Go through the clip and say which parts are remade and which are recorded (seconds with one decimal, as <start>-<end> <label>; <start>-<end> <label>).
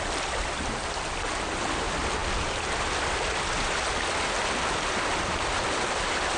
0.0-6.4 recorded